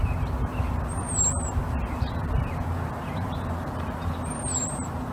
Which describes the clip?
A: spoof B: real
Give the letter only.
A